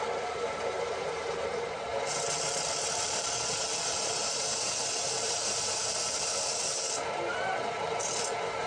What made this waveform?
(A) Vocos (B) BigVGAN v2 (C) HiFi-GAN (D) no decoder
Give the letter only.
B